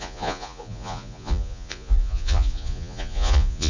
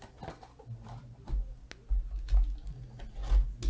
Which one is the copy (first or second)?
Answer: first